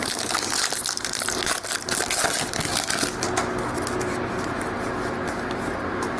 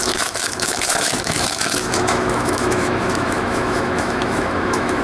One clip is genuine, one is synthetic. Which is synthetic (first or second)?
second